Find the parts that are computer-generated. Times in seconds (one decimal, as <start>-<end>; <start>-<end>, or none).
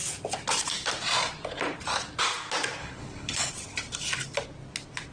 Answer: 2.8-3.5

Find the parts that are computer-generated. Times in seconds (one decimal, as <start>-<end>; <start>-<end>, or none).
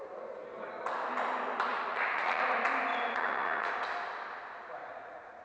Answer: 1.7-2.4; 2.9-3.7; 4.8-5.4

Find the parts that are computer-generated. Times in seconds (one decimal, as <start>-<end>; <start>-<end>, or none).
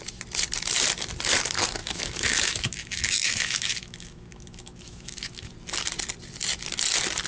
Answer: 1.8-5.5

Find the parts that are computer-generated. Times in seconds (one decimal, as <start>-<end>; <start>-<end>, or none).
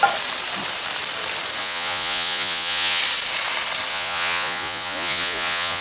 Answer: 1.6-3.0; 3.9-5.8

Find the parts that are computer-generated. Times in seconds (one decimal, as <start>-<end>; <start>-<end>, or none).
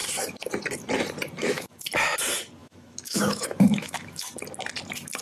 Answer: 1.4-1.9; 2.6-4.3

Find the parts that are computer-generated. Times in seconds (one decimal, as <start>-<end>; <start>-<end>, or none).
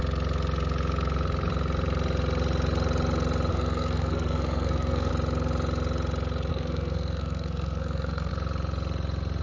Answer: 3.5-5.1; 6.5-8.3